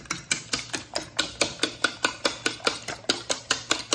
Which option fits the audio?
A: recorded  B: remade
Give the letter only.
A